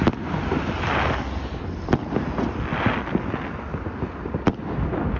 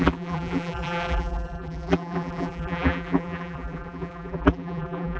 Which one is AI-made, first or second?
second